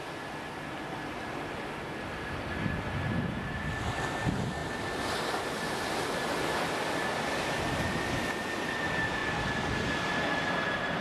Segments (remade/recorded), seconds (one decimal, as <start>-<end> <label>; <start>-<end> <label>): 0.0-11.0 recorded